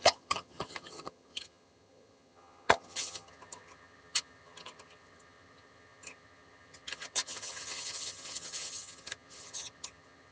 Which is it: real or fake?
fake